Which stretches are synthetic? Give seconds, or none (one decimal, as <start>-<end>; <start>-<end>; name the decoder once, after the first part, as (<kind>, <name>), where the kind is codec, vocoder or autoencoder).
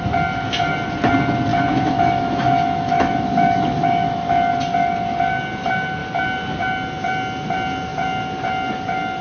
1.5-4.5 (autoencoder, DAC-VAE)